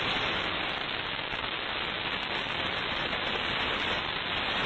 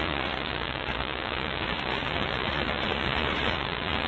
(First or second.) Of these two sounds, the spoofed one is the second